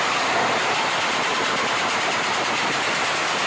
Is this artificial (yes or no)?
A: no